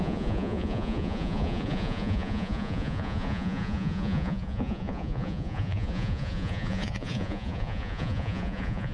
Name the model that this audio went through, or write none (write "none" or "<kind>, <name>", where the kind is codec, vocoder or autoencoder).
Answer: vocoder, Vocos